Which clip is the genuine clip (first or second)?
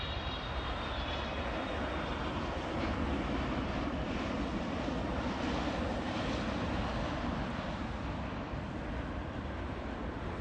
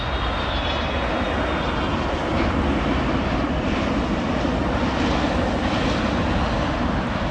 second